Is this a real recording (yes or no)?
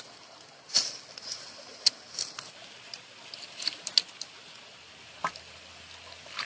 yes